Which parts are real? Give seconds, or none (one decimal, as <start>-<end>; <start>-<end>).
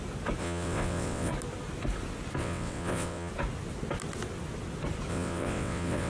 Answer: 0.0-0.4; 1.3-2.4; 3.3-5.1